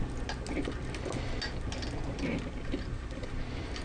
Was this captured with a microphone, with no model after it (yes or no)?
yes